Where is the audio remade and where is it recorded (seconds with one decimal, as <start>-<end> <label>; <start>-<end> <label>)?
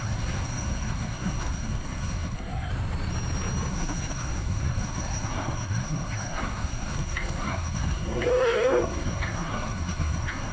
0.0-2.7 remade; 2.7-3.7 recorded; 3.7-10.5 remade